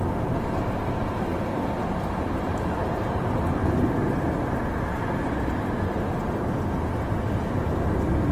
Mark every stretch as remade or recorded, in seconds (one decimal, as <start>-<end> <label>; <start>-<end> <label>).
0.0-1.3 remade; 1.3-1.9 recorded; 1.9-3.6 remade; 3.6-7.4 recorded; 7.4-8.3 remade